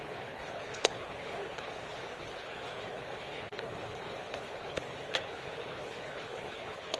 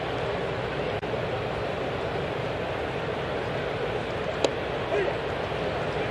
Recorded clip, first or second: second